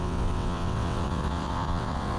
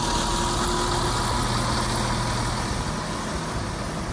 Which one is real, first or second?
second